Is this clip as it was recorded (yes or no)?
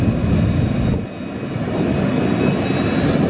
yes